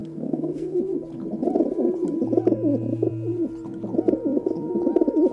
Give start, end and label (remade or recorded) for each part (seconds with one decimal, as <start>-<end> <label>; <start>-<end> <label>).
0.0-0.8 remade; 0.8-5.3 recorded